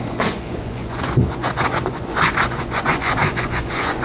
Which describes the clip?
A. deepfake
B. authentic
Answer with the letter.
A